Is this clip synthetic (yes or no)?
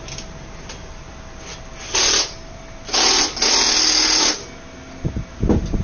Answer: no